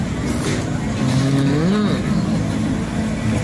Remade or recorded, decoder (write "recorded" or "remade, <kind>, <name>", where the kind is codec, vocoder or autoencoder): recorded